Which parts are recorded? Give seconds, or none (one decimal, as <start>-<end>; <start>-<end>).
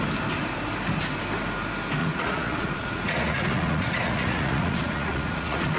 0.0-2.0